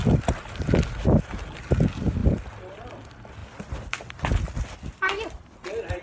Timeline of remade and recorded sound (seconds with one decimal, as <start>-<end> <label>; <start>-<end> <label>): 0.0-6.0 recorded